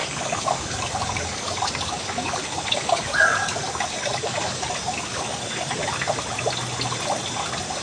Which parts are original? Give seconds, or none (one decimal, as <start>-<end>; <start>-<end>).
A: 5.8-7.8